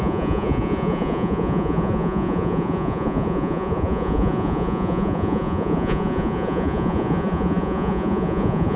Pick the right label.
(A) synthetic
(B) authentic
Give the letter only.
A